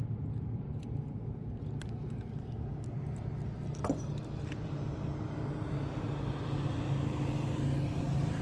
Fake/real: real